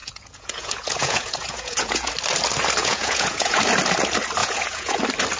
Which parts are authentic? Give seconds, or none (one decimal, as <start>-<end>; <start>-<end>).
2.1-2.8; 3.6-4.4; 5.0-5.4